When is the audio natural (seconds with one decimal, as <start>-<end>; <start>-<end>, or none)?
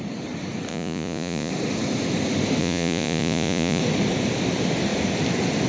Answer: 0.0-0.7; 1.5-2.6; 3.8-5.7